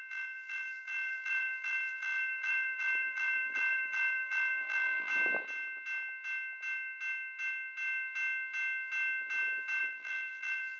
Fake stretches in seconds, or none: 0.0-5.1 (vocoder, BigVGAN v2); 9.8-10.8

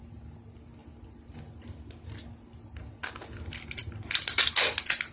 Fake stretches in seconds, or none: 3.8-4.4 (vocoder, BigVGAN v2)